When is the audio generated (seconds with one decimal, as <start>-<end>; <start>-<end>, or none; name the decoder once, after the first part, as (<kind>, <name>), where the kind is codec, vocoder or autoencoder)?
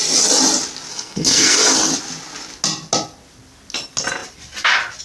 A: 0.9-1.9 (codec, SNAC)